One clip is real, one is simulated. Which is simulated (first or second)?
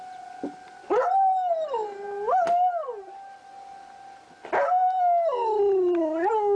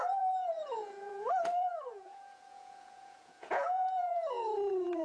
second